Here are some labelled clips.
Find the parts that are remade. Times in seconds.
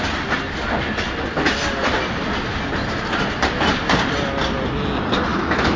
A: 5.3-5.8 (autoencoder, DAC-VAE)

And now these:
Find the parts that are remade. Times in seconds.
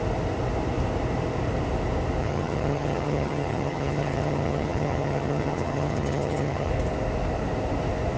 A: 2.2-6.7 (vocoder, HiFi-GAN)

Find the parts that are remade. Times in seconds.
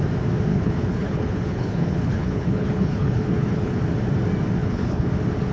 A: 0.5-3.8 (codec, HILCodec); 4.6-5.1